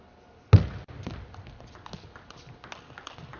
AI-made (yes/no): no